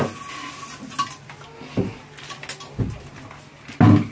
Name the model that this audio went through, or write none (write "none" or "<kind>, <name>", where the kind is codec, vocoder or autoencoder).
none